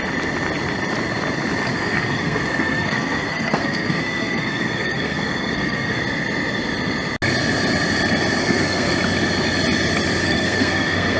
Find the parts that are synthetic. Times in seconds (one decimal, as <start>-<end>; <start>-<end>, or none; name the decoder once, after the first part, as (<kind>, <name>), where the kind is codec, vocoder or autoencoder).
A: 1.7-6.0 (codec, SNAC); 8.4-8.9; 10.2-11.2